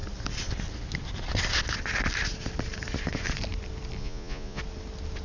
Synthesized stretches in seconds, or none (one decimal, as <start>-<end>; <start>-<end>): 4.0-4.6